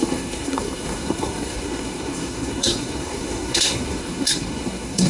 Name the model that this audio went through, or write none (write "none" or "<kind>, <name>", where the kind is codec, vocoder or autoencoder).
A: codec, SNAC